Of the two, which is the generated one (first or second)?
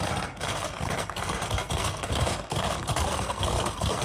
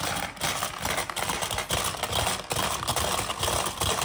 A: first